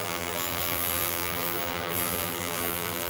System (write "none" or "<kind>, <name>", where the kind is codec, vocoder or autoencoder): vocoder, BigVGAN v2